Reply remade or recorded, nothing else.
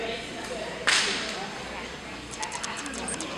recorded